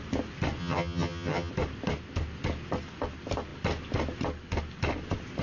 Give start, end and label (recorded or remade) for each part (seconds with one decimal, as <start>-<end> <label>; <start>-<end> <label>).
0.0-0.6 recorded; 0.6-1.5 remade; 1.5-5.4 recorded